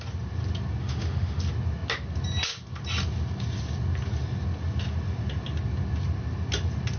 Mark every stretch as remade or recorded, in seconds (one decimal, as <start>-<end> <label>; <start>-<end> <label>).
0.0-0.8 recorded; 0.8-1.4 remade; 1.4-7.0 recorded